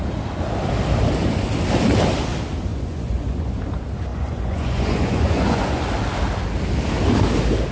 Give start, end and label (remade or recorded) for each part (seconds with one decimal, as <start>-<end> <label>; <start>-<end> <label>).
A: 0.0-2.7 recorded; 2.7-3.6 remade; 3.6-4.1 recorded; 4.1-5.8 remade; 5.8-7.7 recorded